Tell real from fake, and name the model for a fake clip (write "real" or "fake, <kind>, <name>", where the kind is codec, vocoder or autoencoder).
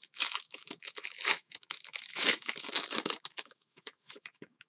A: fake, autoencoder, DAC-VAE